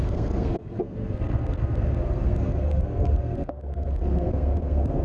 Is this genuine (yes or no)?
no